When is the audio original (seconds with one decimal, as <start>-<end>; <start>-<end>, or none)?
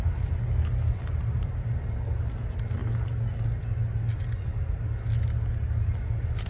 0.0-6.5